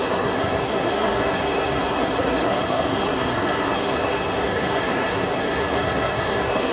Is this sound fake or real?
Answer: fake